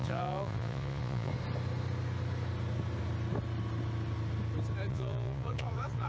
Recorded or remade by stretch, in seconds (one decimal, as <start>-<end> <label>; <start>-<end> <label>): 0.0-1.3 remade; 1.3-4.9 recorded; 4.9-6.1 remade